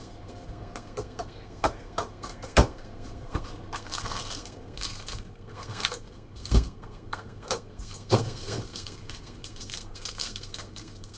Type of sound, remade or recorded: remade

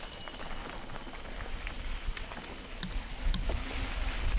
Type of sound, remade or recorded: recorded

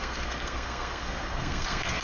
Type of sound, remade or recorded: remade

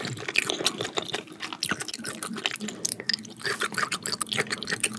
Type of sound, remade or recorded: recorded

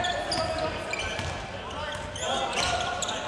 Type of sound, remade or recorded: recorded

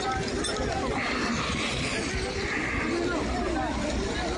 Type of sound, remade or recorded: recorded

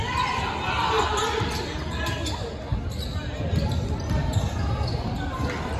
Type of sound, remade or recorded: recorded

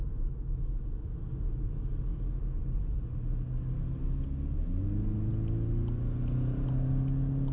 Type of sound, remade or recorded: recorded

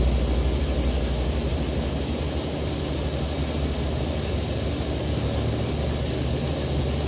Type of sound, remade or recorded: recorded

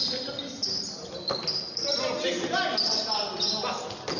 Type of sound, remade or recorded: recorded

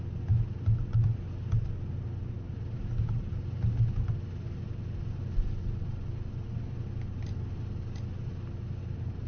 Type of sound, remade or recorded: recorded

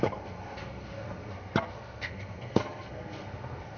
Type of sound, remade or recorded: remade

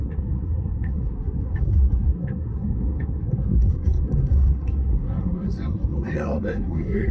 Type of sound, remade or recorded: remade